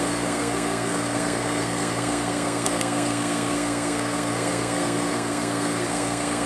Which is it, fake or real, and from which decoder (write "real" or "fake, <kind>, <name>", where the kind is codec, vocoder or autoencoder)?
fake, codec, SNAC